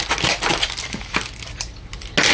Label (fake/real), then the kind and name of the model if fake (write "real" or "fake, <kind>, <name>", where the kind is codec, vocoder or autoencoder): real